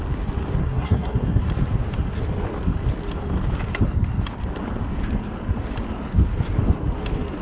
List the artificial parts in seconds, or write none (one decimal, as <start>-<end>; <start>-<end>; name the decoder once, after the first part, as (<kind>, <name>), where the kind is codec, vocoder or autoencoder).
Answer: 0.6-1.4 (codec, SNAC)